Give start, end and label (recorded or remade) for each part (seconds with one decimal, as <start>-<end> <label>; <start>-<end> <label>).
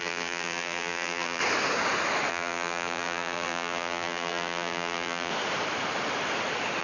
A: 0.0-1.4 remade; 1.4-2.3 recorded; 2.3-5.3 remade; 5.3-6.8 recorded